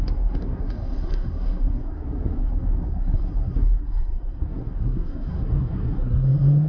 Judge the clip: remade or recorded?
remade